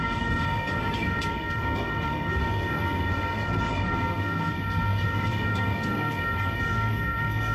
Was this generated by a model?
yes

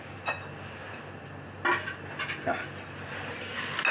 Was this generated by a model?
no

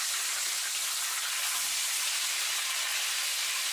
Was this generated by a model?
no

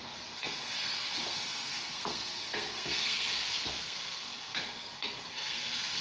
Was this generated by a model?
yes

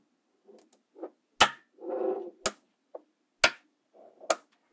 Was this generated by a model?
no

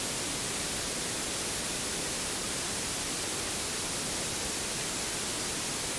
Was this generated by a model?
no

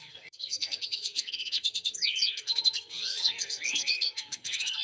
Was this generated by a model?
yes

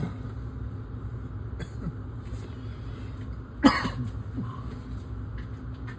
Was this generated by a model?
no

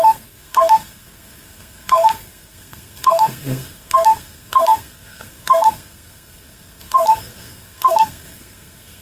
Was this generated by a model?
yes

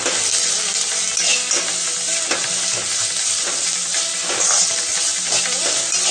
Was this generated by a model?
no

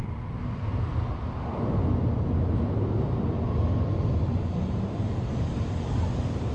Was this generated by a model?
no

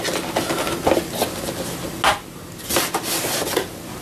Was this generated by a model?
no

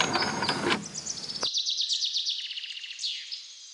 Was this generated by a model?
no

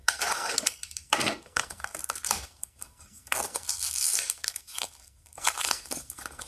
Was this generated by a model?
yes